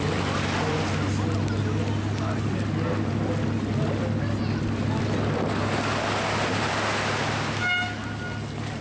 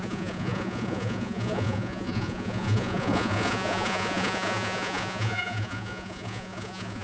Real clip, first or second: first